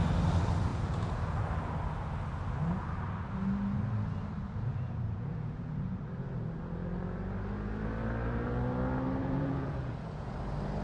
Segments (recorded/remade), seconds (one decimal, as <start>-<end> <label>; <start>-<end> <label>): 0.0-0.7 recorded; 0.7-1.4 remade; 1.4-4.4 recorded; 4.4-5.8 remade; 5.8-9.2 recorded; 9.2-10.3 remade; 10.3-10.8 recorded

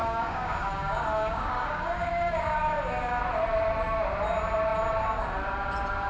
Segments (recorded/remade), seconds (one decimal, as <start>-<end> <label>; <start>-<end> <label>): 0.0-3.2 remade; 3.2-6.1 recorded

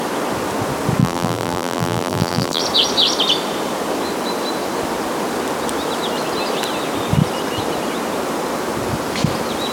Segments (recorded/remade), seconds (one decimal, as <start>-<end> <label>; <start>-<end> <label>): 0.0-1.0 recorded; 1.0-2.6 remade; 2.6-9.7 recorded

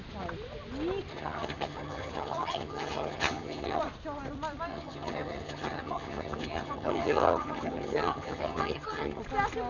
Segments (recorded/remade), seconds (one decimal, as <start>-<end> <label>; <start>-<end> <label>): 0.0-1.1 recorded; 1.1-3.8 remade; 3.8-4.7 recorded; 4.7-9.2 remade; 9.2-9.7 recorded

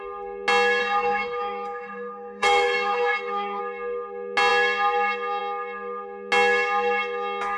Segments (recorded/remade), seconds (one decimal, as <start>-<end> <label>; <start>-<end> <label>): 0.0-0.8 recorded; 0.8-3.6 remade; 3.6-7.6 recorded

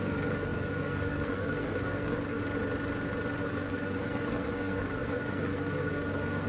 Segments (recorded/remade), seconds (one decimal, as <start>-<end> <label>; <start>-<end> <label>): 0.0-2.4 remade; 2.4-3.4 recorded; 3.4-6.5 remade